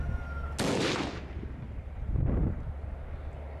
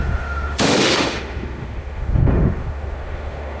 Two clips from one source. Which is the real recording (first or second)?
first